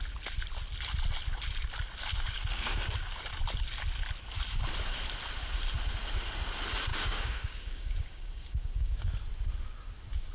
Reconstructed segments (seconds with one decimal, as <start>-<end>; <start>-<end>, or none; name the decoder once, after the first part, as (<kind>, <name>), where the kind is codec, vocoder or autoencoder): 2.1-3.0 (codec, DAC); 6.9-9.1